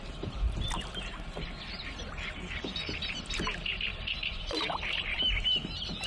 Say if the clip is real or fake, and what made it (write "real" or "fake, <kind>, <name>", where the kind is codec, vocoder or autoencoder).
fake, vocoder, BigVGAN v2